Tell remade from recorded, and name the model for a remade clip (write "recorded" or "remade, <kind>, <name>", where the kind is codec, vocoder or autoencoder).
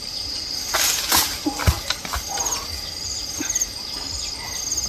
recorded